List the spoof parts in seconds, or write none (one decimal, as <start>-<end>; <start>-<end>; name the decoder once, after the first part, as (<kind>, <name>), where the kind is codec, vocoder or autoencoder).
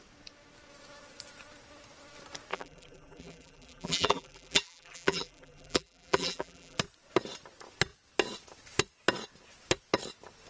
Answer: 2.5-6.8 (vocoder, BigVGAN v2)